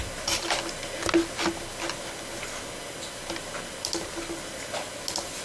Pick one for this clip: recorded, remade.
recorded